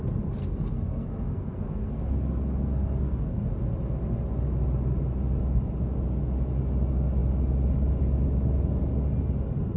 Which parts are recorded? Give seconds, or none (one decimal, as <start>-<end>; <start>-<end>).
0.0-0.4; 3.5-9.8